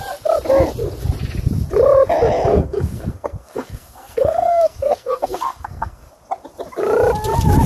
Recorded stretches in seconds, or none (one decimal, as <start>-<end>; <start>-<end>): 0.0-2.5; 6.1-7.7